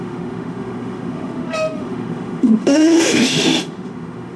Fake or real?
fake